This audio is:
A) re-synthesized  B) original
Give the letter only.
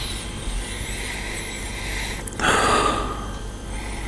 B